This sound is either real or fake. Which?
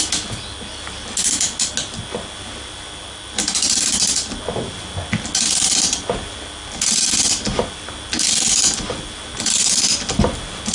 real